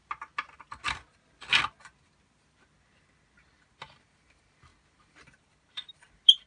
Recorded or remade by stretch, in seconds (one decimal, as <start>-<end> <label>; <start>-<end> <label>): 0.0-6.5 recorded